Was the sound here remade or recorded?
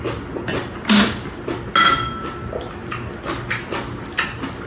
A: recorded